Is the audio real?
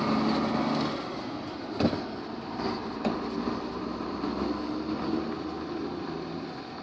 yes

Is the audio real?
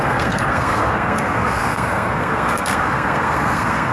no